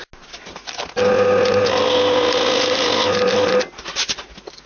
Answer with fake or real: real